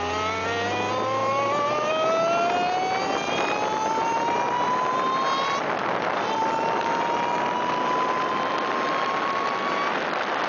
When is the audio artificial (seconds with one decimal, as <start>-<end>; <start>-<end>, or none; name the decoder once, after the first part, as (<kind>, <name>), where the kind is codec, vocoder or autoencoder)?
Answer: 1.2-1.9 (vocoder, BigVGAN v2)